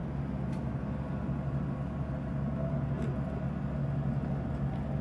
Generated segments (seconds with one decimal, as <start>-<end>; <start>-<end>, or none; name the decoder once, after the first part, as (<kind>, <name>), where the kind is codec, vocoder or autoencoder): none